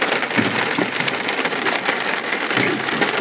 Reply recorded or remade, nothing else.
recorded